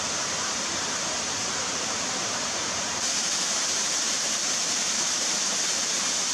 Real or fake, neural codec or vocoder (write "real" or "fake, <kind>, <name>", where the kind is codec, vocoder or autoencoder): fake, vocoder, BigVGAN v2